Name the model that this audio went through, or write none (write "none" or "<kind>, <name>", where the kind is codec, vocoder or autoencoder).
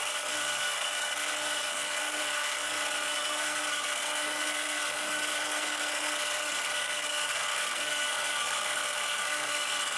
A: codec, SNAC